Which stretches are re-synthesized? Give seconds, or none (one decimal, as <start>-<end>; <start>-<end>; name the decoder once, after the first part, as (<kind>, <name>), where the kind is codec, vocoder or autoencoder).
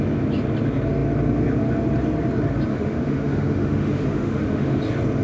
2.7-4.8 (autoencoder, DAC-VAE)